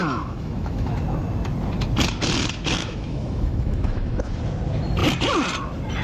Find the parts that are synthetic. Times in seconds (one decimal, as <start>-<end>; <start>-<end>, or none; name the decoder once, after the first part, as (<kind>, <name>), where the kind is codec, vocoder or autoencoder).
0.0-0.9 (autoencoder, DAC-VAE); 2.8-4.4